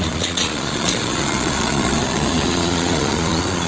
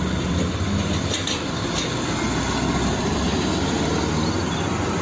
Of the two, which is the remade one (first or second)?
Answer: first